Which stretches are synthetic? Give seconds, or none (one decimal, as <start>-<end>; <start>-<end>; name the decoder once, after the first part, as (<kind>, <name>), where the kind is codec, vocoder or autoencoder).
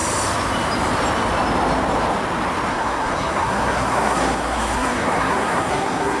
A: 2.7-6.2 (codec, SNAC)